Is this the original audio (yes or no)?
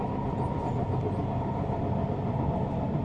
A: yes